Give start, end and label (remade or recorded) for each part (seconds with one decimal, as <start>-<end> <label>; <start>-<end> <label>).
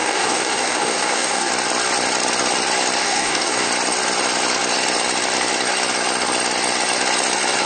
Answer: 0.0-1.5 remade; 1.5-3.0 recorded; 3.0-3.7 remade; 3.7-7.7 recorded